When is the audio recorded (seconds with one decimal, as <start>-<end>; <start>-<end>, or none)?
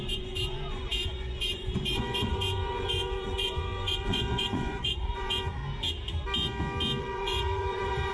5.6-7.0